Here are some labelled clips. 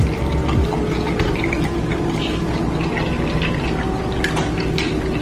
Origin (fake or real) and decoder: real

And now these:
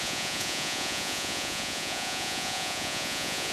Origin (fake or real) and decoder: fake, vocoder, Vocos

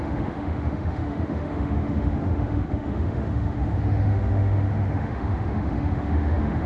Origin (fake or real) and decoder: fake, autoencoder, DAC-VAE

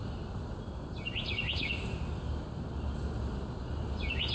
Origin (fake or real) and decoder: real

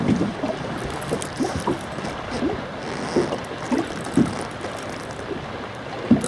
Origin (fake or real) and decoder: real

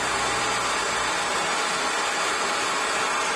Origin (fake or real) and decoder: real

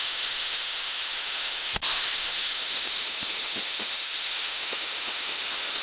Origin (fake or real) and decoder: fake, autoencoder, DAC-VAE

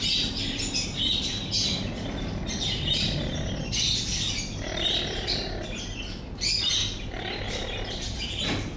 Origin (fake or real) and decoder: real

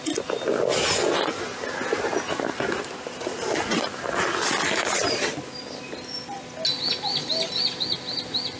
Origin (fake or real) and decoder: real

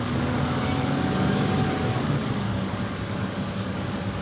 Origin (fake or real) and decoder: fake, codec, DAC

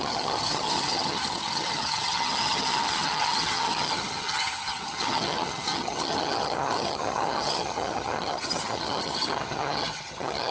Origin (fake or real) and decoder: fake, vocoder, HiFi-GAN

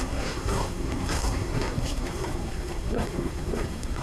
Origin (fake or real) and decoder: fake, codec, SNAC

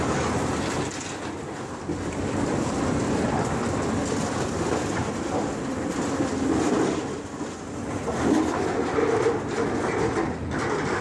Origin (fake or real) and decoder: real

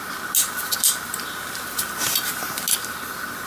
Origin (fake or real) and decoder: real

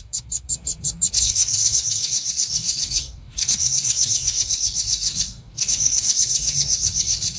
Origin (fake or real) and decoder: fake, codec, DAC